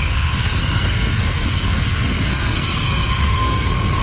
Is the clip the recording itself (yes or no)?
no